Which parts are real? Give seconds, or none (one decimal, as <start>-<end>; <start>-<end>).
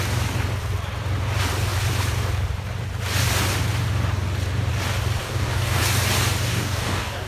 0.0-5.2; 5.8-6.5